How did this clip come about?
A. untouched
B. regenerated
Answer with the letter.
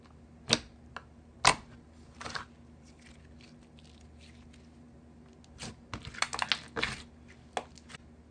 A